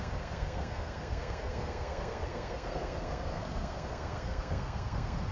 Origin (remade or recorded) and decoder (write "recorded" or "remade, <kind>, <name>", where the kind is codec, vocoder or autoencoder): remade, codec, SNAC